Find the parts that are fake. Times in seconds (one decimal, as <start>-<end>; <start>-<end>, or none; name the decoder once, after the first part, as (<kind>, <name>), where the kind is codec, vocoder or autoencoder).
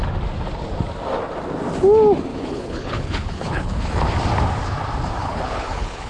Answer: 2.3-4.0 (codec, HILCodec); 5.2-6.1